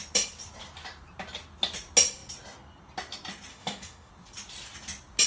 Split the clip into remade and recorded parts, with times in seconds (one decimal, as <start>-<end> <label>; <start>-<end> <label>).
0.0-3.5 recorded; 3.5-4.1 remade; 4.1-5.3 recorded